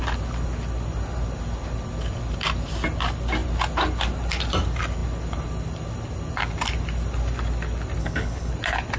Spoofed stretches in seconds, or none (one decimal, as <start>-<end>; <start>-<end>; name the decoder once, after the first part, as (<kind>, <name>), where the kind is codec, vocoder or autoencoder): 8.0-8.5 (codec, HILCodec)